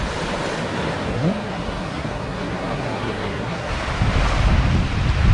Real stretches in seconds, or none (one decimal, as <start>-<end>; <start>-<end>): 0.0-1.1; 3.8-5.3